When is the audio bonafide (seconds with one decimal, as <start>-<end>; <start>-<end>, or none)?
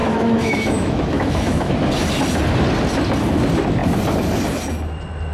1.7-5.3